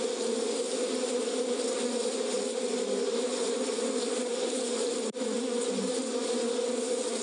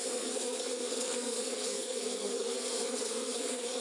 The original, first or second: first